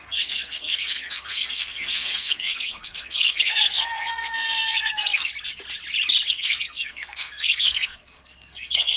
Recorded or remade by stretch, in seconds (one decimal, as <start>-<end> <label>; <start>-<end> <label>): 0.0-5.3 remade; 5.3-6.3 recorded; 6.3-9.0 remade